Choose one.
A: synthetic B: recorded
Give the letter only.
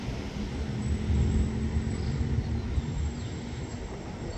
B